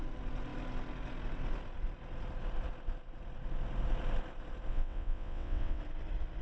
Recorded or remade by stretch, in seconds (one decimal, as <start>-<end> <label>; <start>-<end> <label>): 0.0-4.7 recorded; 4.7-5.8 remade; 5.8-6.4 recorded